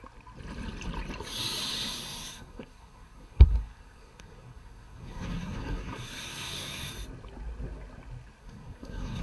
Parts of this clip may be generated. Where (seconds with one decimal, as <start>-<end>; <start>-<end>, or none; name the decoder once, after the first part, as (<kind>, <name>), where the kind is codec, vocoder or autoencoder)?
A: 1.6-6.9 (codec, SNAC); 8.4-9.2